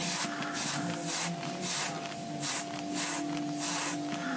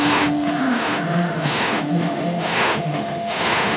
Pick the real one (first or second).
first